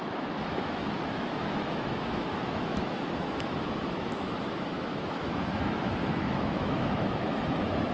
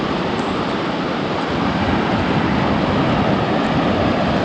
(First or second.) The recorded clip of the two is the second